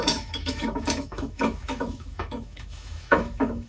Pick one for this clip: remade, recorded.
remade